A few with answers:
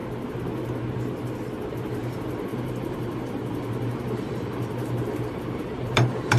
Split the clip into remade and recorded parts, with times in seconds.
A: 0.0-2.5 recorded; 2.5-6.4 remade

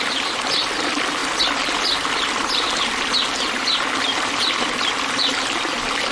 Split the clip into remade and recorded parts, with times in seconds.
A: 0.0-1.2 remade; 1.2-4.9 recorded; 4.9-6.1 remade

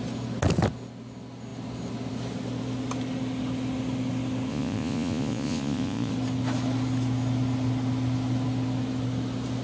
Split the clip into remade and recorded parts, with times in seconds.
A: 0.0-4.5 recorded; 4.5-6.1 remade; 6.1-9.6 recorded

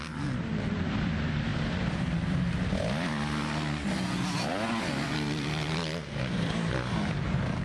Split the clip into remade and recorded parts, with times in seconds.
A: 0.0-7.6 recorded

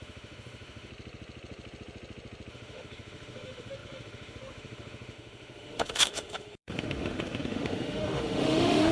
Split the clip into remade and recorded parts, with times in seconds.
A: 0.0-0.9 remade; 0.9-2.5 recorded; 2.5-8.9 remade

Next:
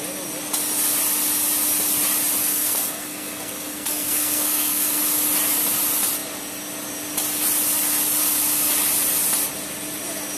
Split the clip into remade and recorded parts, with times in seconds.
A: 0.0-2.4 recorded; 2.4-5.0 remade; 5.0-10.4 recorded

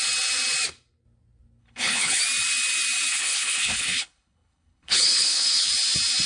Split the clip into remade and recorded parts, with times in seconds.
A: 0.0-1.6 recorded; 1.6-2.2 remade; 2.2-3.1 recorded; 3.1-5.7 remade; 5.7-6.3 recorded

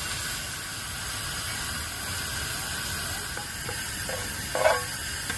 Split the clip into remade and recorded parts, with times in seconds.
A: 0.0-0.7 recorded; 0.7-2.0 remade; 2.0-3.4 recorded; 3.4-4.4 remade; 4.4-5.4 recorded